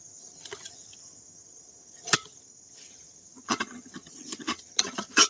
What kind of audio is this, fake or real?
fake